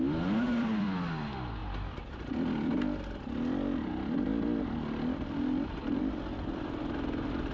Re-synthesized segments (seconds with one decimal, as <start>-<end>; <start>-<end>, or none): none